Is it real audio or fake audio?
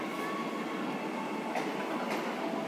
real